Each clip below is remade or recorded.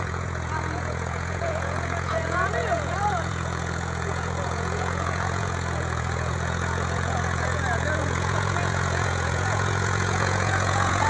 remade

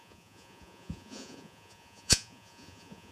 remade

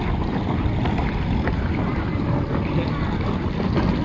recorded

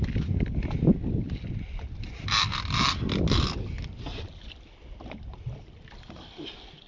recorded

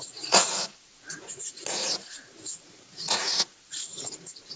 remade